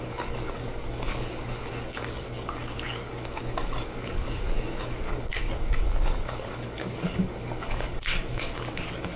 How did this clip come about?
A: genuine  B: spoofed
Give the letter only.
B